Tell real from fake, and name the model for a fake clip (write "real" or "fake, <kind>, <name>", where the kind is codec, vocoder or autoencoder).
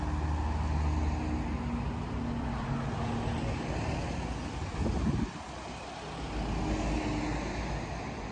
real